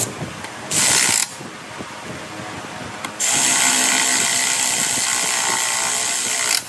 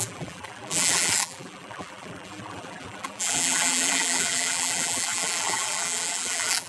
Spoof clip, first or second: second